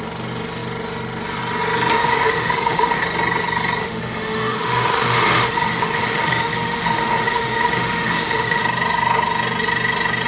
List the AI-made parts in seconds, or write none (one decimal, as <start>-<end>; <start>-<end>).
1.9-3.0; 3.8-8.6